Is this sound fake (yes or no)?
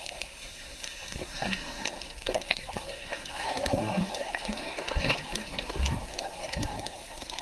yes